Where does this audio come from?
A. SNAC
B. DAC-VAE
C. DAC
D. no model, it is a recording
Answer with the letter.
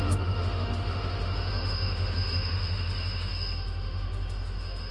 B